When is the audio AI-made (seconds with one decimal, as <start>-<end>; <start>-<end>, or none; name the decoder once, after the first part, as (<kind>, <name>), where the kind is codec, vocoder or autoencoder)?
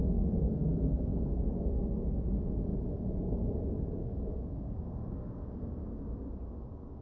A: 0.0-2.1 (codec, SNAC); 4.4-6.3